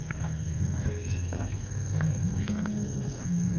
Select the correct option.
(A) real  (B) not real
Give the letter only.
B